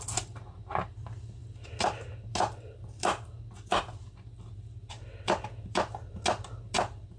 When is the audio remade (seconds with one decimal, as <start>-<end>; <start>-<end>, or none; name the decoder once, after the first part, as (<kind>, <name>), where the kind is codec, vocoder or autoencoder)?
none